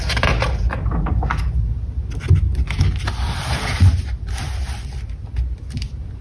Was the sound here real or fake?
real